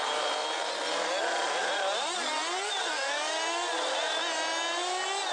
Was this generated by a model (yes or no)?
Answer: no